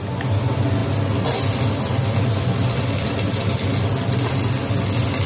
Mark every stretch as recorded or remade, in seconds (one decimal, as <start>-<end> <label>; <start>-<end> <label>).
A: 0.0-5.3 recorded